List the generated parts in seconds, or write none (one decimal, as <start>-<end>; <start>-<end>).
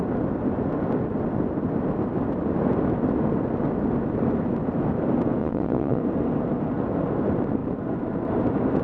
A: 5.4-6.0